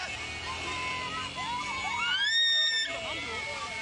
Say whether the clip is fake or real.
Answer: real